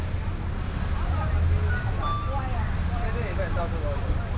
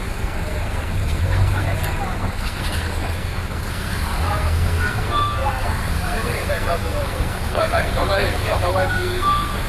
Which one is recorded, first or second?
first